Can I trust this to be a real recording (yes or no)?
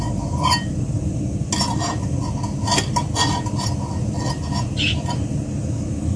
yes